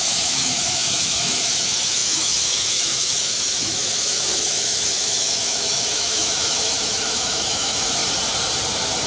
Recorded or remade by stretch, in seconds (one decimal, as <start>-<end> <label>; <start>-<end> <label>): 0.0-8.0 remade; 8.0-9.1 recorded